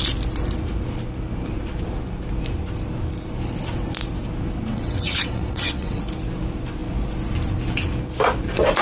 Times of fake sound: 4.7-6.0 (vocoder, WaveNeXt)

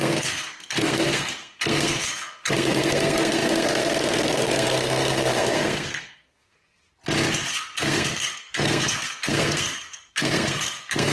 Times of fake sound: 0.0-6.8 (codec, SNAC); 7.5-11.1

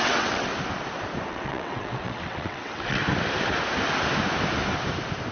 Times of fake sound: 0.0-0.5 (vocoder, WaveNeXt); 1.3-3.0

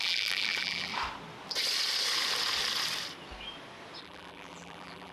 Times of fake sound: 0.0-0.9 (vocoder, BigVGAN v2); 4.0-5.1

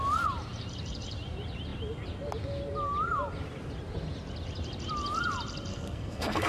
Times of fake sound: 5.7-6.5 (codec, SNAC)

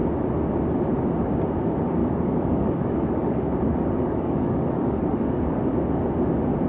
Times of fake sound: 2.0-5.6 (codec, DAC)

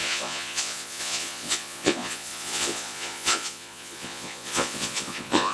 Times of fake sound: 0.0-5.5 (vocoder, Vocos)